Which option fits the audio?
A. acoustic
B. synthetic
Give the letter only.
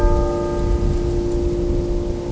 A